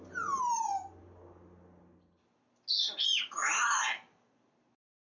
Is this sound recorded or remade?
recorded